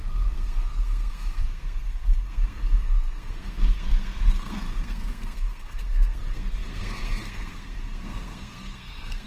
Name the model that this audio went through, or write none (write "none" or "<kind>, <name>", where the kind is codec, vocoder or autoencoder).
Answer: codec, SNAC